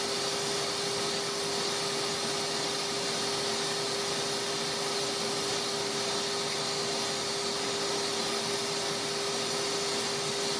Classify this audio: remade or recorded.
recorded